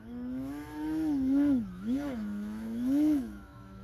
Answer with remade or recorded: remade